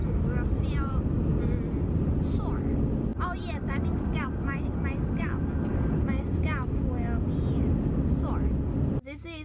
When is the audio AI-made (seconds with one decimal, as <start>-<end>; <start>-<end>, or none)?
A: none